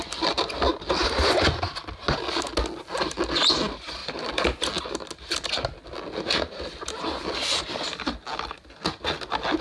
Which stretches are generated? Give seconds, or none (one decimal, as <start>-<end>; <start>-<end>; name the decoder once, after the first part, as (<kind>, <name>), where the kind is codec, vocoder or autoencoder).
4.0-4.8 (vocoder, BigVGAN v2)